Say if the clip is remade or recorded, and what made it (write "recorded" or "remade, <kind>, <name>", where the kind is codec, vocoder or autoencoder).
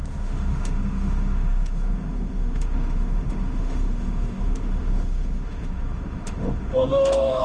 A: remade, autoencoder, DAC-VAE